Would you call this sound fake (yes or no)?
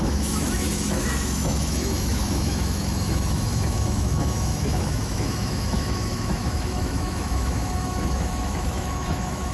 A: yes